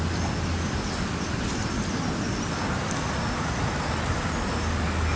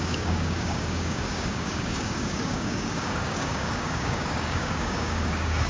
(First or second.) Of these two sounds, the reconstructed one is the second